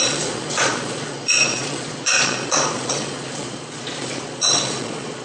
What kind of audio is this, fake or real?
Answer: fake